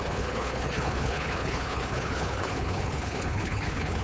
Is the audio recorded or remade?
remade